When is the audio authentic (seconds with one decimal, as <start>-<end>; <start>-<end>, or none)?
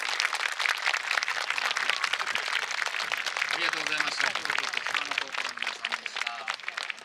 0.0-7.0